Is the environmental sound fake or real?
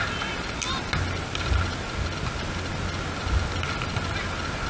real